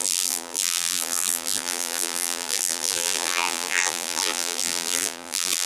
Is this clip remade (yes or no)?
yes